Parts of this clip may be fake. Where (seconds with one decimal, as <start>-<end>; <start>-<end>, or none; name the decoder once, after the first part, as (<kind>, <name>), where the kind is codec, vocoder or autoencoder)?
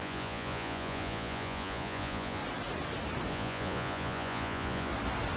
0.0-2.4 (vocoder, Vocos); 3.3-4.9